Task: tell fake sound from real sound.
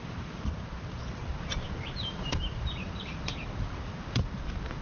fake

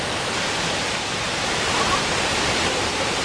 fake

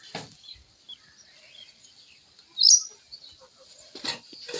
real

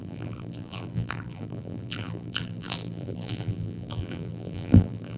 fake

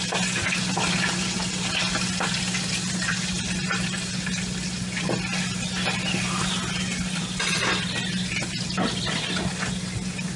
real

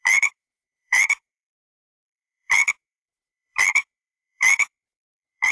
fake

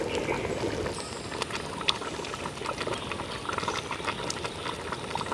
real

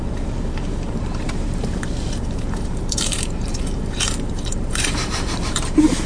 fake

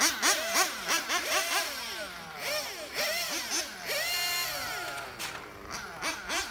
real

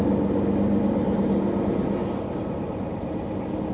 real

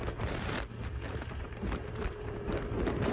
fake